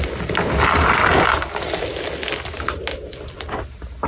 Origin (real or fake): real